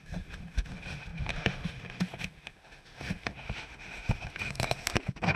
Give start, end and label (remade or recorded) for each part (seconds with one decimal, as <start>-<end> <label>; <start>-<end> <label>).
0.0-5.4 remade